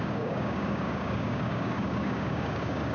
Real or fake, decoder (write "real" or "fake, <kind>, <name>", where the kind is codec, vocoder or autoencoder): fake, codec, DAC